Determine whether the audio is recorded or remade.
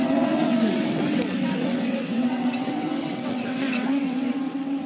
remade